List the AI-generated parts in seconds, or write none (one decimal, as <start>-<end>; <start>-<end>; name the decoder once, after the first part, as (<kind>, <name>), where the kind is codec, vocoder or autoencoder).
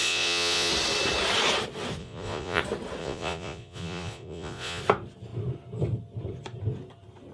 0.0-0.7 (vocoder, Vocos); 2.0-2.6; 3.0-4.8